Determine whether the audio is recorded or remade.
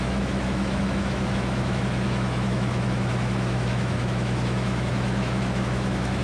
remade